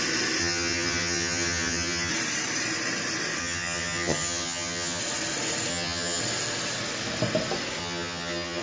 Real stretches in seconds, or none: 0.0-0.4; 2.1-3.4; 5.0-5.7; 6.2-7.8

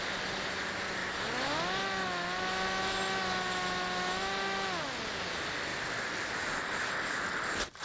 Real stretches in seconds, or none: 0.0-7.8

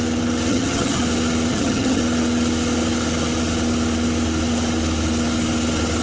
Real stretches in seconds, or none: 0.0-0.5; 1.0-1.5; 2.0-6.0